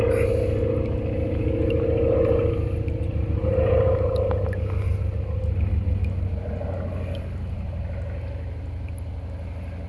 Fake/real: real